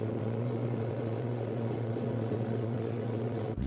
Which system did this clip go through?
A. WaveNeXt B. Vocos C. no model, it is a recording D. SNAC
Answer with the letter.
A